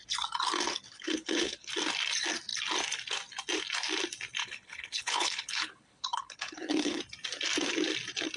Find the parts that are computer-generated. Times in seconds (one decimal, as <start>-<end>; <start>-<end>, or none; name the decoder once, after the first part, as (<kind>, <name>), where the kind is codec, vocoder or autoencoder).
0.9-1.7 (codec, HILCodec); 4.4-7.0